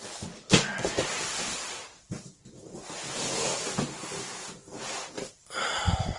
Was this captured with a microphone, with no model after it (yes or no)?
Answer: no